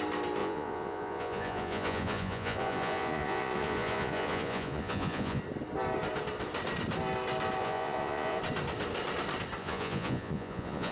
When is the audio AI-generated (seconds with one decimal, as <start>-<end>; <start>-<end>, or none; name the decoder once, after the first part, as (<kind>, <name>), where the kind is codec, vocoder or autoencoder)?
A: 0.4-5.4 (vocoder, Vocos); 7.6-8.4; 9.6-10.9